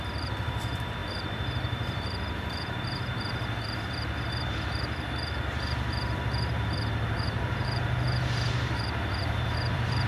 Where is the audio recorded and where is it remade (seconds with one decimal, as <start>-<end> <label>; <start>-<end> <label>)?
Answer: 0.0-10.1 remade